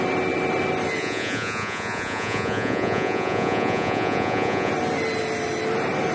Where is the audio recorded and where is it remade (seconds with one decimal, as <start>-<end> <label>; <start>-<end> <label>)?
0.0-1.0 recorded; 1.0-4.7 remade; 4.7-6.1 recorded